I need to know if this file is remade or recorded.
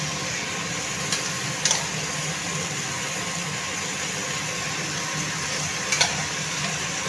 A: recorded